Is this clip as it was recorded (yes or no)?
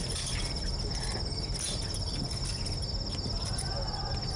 yes